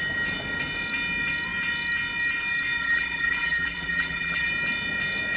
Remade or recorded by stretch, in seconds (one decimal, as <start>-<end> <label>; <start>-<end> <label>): 0.0-2.8 recorded; 2.8-4.5 remade; 4.5-5.4 recorded